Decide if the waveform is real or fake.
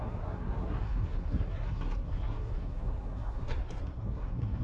fake